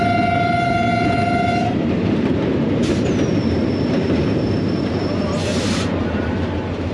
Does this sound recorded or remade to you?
remade